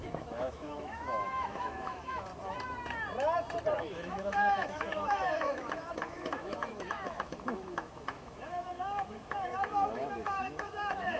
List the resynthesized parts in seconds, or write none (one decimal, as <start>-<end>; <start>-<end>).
0.0-2.3; 3.8-11.2